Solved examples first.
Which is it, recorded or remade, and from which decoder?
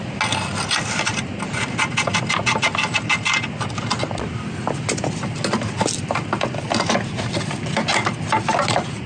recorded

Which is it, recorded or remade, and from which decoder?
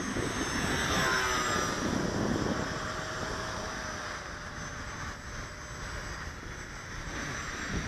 recorded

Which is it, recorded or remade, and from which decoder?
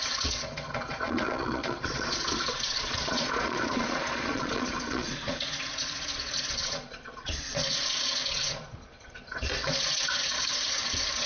remade, vocoder, Vocos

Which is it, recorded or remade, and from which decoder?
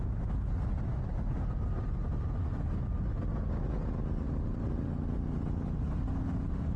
recorded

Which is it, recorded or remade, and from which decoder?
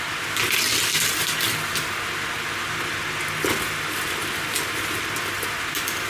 recorded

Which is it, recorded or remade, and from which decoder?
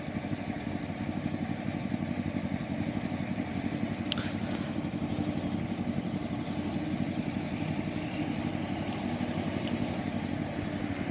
recorded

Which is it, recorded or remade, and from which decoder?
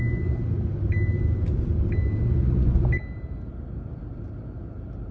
recorded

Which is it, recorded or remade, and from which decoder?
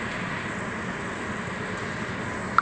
recorded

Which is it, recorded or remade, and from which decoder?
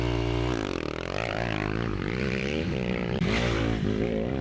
remade, vocoder, BigVGAN v2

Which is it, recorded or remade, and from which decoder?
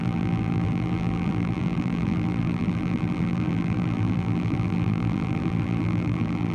remade, vocoder, BigVGAN v2